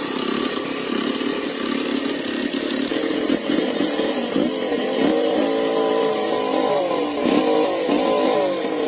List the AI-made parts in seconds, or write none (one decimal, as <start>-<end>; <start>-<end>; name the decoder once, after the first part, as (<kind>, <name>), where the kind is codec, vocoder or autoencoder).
2.9-7.4 (vocoder, BigVGAN v2)